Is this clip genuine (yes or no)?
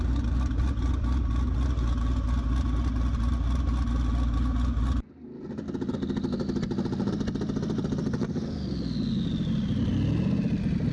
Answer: yes